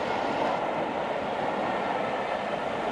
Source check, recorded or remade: recorded